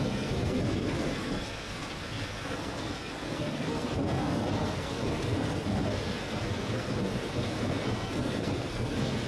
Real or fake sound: fake